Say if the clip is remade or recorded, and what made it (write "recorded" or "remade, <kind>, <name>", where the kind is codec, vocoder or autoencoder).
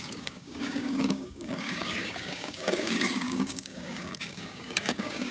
remade, codec, DAC